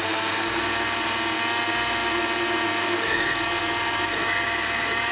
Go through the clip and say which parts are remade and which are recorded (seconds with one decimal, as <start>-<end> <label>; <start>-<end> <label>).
0.0-5.1 recorded